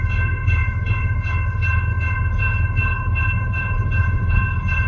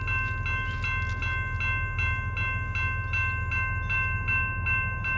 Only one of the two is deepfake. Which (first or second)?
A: first